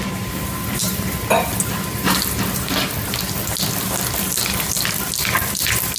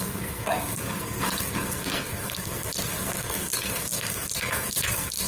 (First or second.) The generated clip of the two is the second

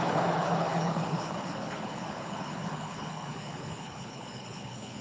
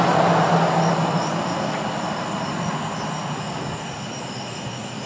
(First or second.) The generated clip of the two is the first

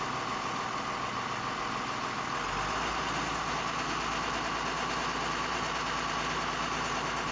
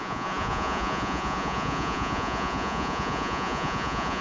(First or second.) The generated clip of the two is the second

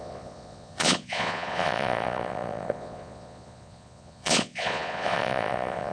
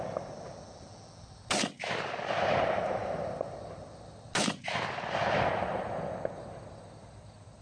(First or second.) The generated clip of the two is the first